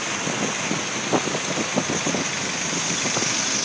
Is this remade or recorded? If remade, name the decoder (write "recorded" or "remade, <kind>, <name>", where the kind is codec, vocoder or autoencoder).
recorded